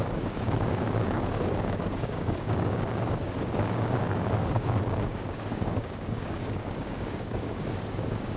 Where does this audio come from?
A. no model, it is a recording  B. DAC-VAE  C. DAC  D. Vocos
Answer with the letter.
C